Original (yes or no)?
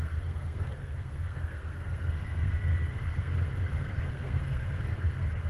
no